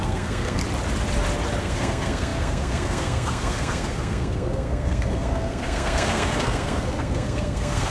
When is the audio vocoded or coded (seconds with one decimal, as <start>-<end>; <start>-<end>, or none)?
0.0-0.6; 1.6-7.9